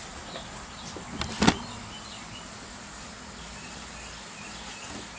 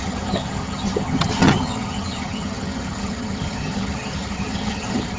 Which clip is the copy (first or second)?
second